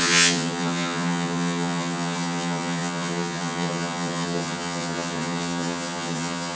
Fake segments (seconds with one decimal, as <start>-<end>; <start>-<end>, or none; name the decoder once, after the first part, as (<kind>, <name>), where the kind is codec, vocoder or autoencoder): 0.0-6.5 (vocoder, HiFi-GAN)